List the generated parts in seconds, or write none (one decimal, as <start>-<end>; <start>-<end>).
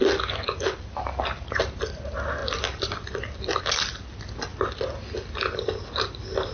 none